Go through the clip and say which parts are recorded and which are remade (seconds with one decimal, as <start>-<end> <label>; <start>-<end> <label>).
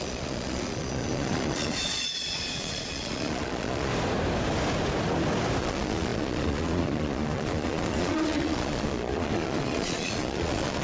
0.0-3.9 remade; 3.9-5.6 recorded; 5.6-10.8 remade